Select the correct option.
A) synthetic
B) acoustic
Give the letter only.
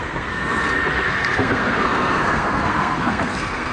A